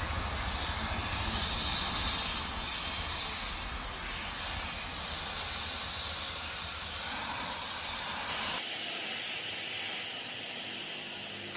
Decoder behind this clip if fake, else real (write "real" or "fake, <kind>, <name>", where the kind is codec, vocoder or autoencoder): real